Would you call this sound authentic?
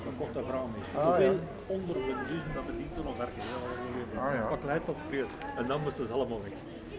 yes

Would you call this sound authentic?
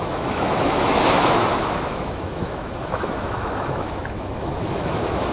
no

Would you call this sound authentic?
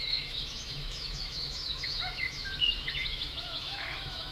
no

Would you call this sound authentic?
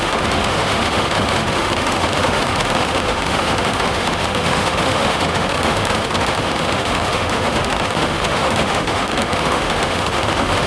no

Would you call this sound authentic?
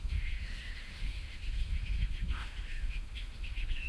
no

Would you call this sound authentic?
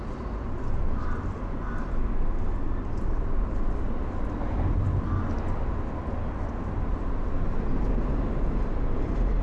yes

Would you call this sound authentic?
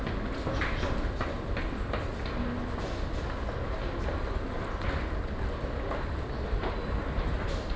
yes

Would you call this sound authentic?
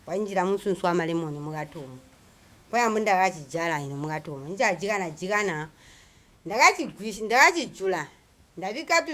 no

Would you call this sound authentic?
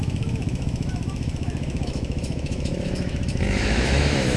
no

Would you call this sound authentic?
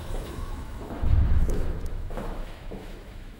no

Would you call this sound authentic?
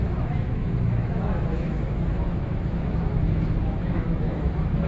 no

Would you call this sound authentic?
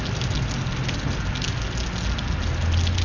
yes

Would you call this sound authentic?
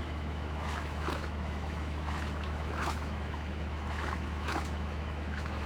no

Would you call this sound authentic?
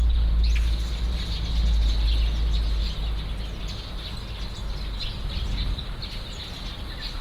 yes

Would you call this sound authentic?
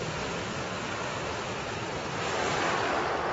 yes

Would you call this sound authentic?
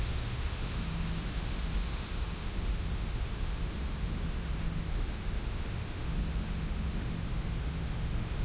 no